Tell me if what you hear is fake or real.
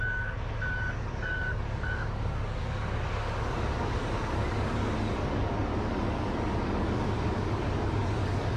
fake